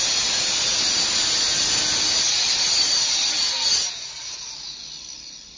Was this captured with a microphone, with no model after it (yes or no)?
yes